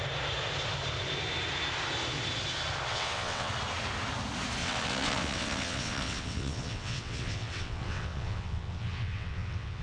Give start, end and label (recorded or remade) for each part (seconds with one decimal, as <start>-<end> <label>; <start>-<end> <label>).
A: 0.0-2.9 recorded; 2.9-3.5 remade; 3.5-4.6 recorded; 4.6-9.8 remade